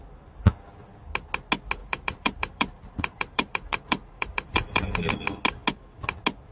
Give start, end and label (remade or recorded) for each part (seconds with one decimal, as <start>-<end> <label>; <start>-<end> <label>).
0.0-1.8 recorded; 1.8-5.0 remade; 5.0-6.5 recorded